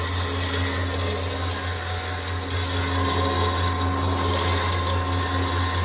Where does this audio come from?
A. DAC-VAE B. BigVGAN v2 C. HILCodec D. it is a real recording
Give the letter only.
D